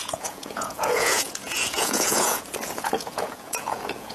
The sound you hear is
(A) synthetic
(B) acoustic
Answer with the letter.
A